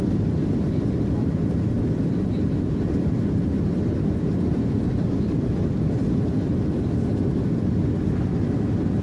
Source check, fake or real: fake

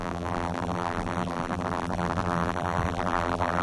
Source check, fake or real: fake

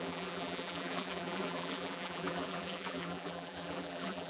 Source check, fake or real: fake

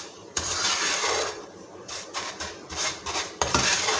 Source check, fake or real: fake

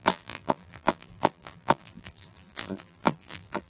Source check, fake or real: fake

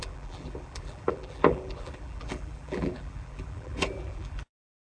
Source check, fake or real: fake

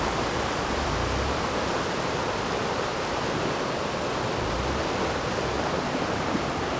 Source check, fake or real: real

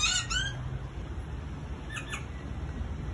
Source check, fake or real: real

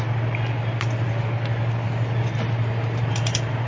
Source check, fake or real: real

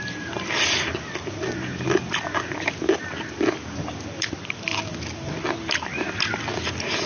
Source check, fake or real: real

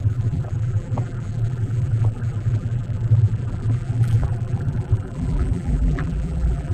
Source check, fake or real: fake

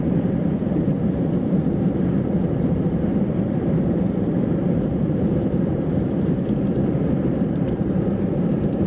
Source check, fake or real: fake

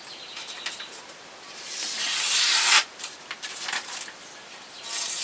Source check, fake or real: fake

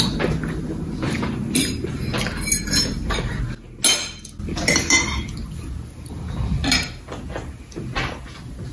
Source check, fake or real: real